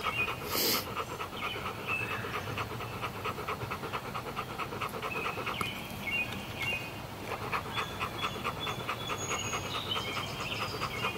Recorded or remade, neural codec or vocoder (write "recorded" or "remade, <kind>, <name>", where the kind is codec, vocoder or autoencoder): recorded